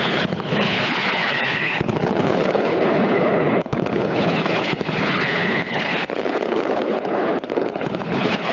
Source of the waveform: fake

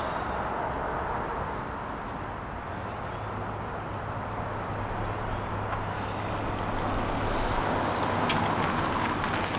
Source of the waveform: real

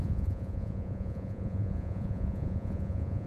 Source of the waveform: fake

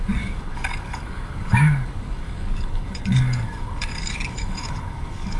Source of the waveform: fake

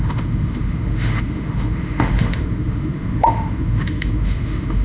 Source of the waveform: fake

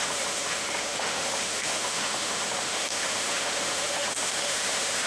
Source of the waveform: fake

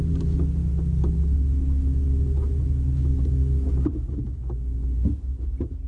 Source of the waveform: real